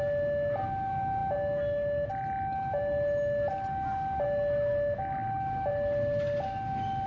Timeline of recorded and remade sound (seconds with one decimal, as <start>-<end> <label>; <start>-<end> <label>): 0.0-7.1 recorded